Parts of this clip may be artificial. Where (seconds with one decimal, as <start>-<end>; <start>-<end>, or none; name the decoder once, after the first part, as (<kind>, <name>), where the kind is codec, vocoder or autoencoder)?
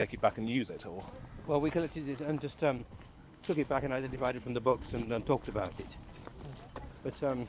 0.0-0.7 (codec, HILCodec); 2.8-5.8